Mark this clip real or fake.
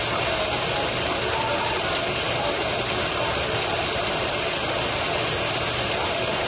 real